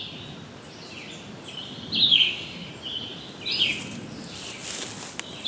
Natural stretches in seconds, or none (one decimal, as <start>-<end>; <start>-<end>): 0.0-2.1; 2.7-5.5